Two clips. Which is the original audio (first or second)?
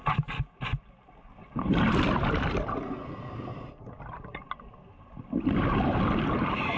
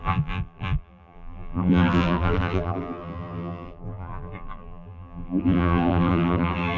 first